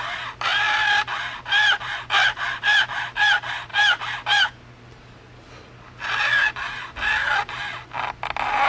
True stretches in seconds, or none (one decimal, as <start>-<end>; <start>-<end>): 0.0-8.7

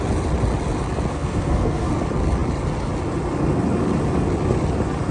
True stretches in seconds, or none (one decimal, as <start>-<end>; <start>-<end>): 0.0-1.1; 1.9-5.1

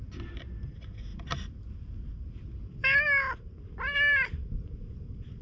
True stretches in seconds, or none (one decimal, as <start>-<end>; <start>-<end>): 0.0-5.4

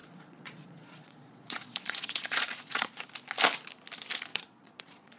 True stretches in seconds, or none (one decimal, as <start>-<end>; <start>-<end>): 3.1-4.3

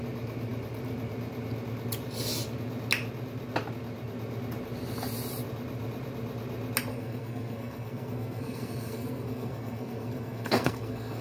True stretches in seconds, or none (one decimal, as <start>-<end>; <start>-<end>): 0.0-6.9

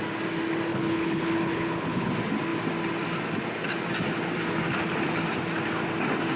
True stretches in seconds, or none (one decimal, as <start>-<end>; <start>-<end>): 0.0-0.7; 2.1-6.4